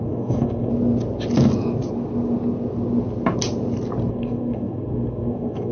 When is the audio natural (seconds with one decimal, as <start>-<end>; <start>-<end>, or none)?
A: 0.7-4.1